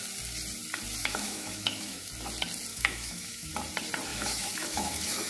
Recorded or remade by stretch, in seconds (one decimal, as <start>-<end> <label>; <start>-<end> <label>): 0.0-1.0 recorded; 1.0-2.1 remade; 2.1-2.7 recorded; 2.7-3.5 remade; 3.5-4.1 recorded; 4.1-5.3 remade